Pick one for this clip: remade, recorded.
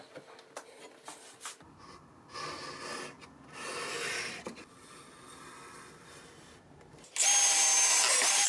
recorded